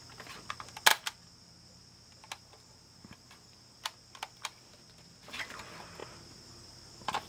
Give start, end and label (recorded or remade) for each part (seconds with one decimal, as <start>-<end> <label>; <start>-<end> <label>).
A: 0.0-7.3 recorded